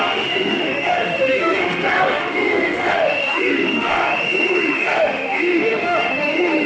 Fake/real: fake